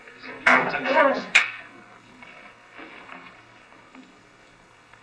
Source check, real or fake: fake